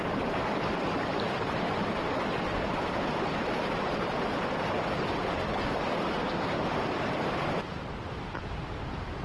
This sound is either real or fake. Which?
real